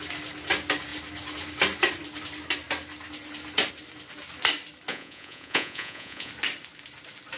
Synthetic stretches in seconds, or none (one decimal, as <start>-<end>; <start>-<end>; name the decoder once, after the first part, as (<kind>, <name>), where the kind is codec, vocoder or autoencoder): 4.9-6.3 (vocoder, Vocos)